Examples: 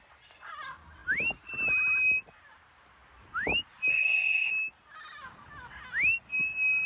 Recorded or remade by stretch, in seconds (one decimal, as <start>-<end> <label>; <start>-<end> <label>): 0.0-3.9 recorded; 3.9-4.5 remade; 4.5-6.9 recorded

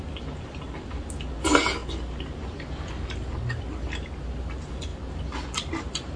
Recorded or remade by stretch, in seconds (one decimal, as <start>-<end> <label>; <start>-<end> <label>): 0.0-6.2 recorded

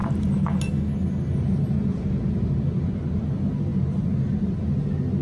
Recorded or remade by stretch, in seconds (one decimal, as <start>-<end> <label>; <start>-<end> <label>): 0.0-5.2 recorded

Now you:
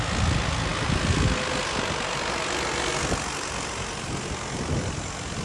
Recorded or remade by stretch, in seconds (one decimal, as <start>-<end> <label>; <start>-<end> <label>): 0.0-5.4 recorded

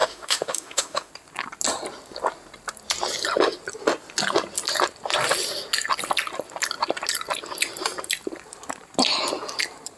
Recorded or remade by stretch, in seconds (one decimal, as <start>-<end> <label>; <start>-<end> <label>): 0.0-1.1 remade; 1.1-10.0 recorded

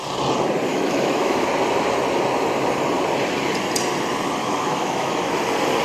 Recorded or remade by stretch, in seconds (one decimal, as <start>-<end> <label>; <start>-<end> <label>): 0.0-0.7 recorded; 0.7-1.5 remade; 1.5-4.4 recorded; 4.4-5.1 remade; 5.1-5.8 recorded

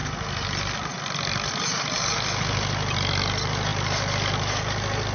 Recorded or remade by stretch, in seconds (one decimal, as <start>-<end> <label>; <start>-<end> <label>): 0.0-5.1 recorded